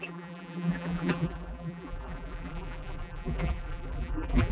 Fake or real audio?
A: fake